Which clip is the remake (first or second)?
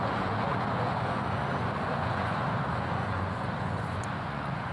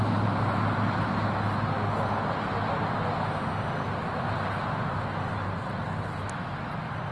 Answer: first